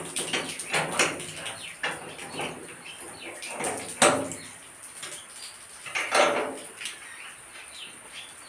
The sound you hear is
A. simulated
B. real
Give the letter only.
B